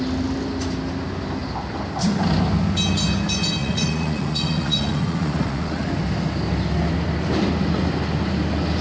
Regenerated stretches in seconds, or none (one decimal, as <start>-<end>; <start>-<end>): 3.6-5.9

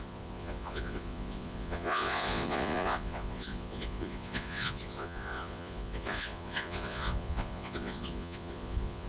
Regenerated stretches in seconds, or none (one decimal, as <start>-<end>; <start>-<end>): 0.0-9.1

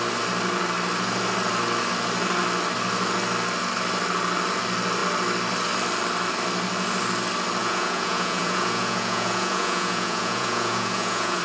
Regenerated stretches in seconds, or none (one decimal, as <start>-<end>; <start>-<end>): 7.6-11.4

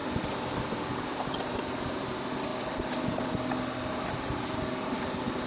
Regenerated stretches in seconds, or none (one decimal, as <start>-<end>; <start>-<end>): 0.0-2.5; 3.9-5.5

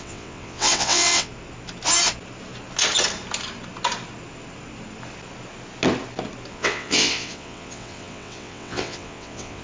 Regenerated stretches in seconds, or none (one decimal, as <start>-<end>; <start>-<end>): 0.0-1.3; 6.5-9.6